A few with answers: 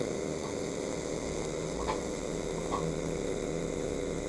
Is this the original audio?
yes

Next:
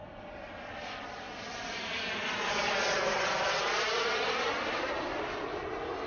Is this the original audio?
yes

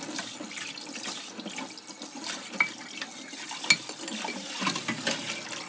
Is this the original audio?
yes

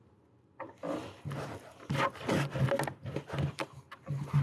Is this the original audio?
yes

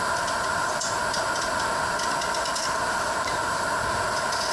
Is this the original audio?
yes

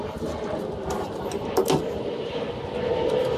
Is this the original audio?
yes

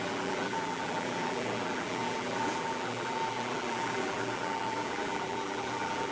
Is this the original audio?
no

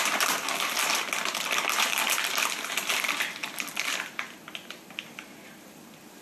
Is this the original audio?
no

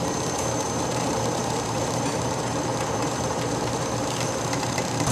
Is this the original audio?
no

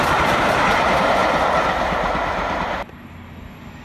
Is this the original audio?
yes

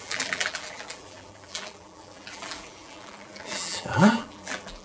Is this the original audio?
no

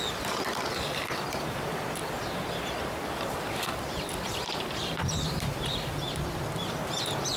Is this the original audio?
no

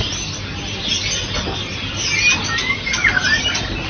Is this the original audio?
yes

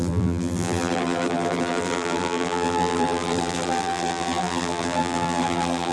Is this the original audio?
no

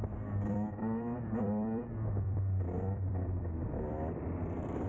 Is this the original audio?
no